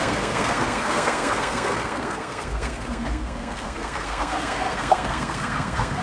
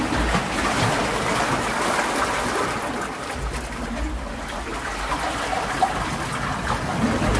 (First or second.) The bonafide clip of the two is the second